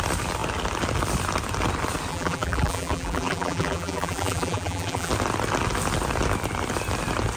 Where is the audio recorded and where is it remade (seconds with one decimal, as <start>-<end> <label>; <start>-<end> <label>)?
0.0-2.1 recorded; 2.1-5.1 remade; 5.1-7.4 recorded

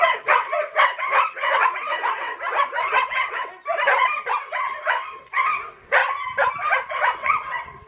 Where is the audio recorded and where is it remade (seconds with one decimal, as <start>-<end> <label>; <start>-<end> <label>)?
0.0-2.3 remade; 2.3-2.8 recorded; 2.8-3.5 remade; 3.5-4.4 recorded; 4.4-6.0 remade; 6.0-6.9 recorded; 6.9-7.9 remade

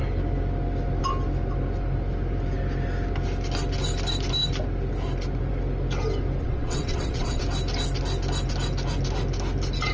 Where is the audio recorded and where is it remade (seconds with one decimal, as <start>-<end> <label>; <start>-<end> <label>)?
0.0-6.4 recorded; 6.4-7.4 remade; 7.4-9.9 recorded

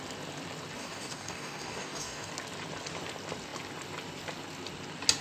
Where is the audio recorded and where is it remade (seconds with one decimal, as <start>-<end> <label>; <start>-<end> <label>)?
0.0-0.8 recorded; 0.8-2.3 remade; 2.3-5.2 recorded